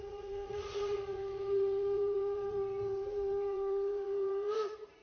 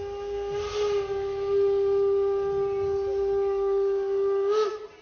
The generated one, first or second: first